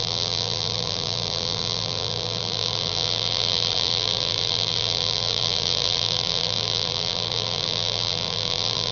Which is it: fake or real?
fake